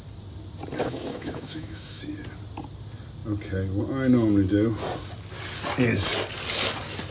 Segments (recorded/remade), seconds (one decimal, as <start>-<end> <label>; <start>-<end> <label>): 0.0-0.8 recorded; 0.8-2.0 remade; 2.0-7.1 recorded